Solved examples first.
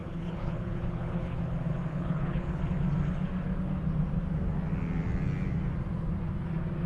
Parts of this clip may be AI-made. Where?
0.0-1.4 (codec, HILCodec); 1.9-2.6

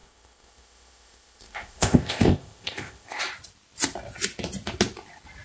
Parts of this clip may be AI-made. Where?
0.0-3.2 (codec, ZipCodec)

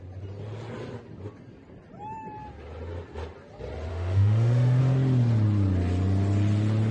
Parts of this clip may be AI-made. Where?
3.9-4.8 (autoencoder, DAC-VAE)

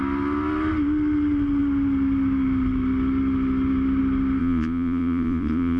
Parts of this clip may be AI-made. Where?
4.4-5.8 (vocoder, Vocos)

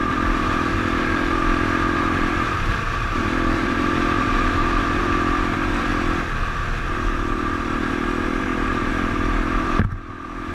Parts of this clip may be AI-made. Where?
0.0-5.9 (vocoder, BigVGAN v2); 6.8-10.5

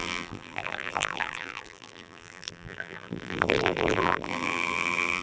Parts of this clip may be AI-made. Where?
0.0-5.2 (vocoder, BigVGAN v2)

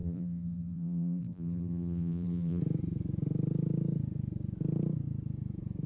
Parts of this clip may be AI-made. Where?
0.0-2.6 (vocoder, BigVGAN v2)

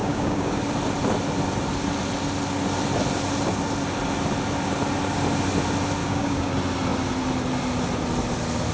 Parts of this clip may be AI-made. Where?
0.0-0.6 (codec, DAC); 6.0-6.5